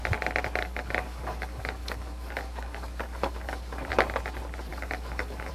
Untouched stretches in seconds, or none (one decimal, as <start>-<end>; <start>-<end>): 0.0-0.6; 3.9-4.7